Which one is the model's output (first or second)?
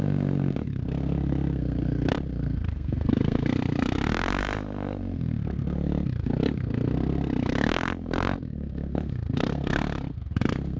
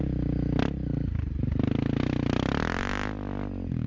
first